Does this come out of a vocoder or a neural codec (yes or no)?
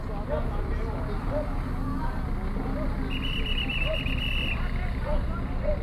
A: no